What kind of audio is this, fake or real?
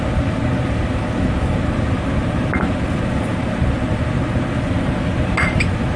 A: real